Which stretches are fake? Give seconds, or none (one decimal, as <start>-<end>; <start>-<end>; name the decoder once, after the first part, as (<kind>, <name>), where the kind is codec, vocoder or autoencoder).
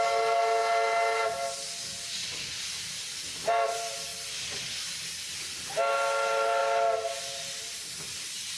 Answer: none